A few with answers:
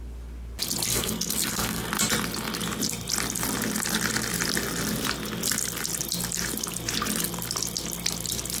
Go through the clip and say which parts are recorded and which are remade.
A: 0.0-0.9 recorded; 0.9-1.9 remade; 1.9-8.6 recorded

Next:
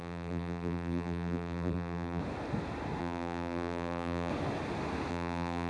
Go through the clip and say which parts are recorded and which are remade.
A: 0.0-2.2 remade; 2.2-3.0 recorded; 3.0-4.3 remade; 4.3-5.1 recorded; 5.1-5.7 remade

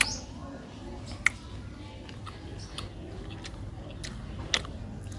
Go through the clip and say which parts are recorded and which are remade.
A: 0.0-5.2 recorded

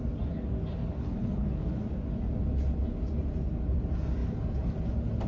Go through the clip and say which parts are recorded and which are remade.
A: 0.0-0.8 recorded; 0.8-1.8 remade; 1.8-5.3 recorded

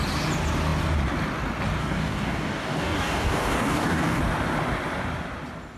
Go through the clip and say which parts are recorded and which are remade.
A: 0.0-1.8 recorded; 1.8-4.2 remade; 4.2-5.8 recorded